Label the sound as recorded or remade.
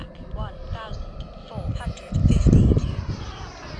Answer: recorded